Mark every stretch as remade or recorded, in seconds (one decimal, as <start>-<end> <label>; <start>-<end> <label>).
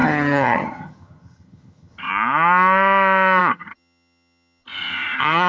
0.0-2.1 remade; 2.1-3.4 recorded; 3.4-5.5 remade